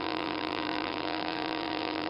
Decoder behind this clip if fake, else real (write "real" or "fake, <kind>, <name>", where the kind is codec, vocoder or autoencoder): fake, vocoder, BigVGAN v2